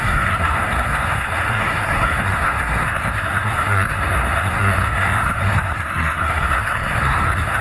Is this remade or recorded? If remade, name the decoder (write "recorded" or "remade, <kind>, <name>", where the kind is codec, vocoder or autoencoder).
remade, codec, SNAC